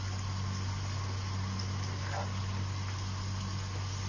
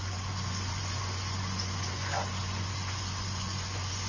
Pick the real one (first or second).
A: first